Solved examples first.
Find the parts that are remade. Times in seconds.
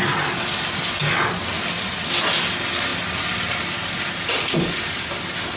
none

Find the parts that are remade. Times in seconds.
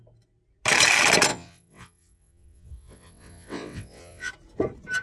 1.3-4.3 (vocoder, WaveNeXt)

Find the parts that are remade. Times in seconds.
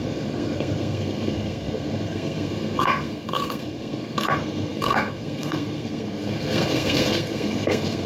0.0-8.1 (codec, SNAC)